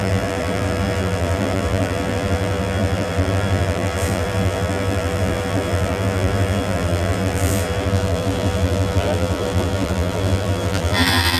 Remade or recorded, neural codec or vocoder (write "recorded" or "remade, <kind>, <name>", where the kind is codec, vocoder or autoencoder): remade, vocoder, BigVGAN v2